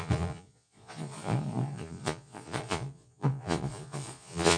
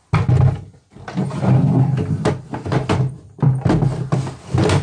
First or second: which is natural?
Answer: second